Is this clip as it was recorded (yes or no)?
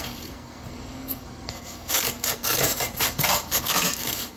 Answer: no